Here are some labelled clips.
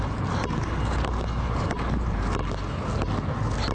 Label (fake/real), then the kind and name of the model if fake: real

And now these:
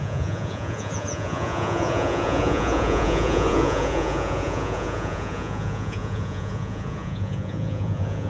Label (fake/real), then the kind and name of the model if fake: fake, vocoder, Vocos